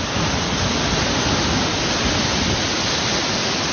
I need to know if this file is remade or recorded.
recorded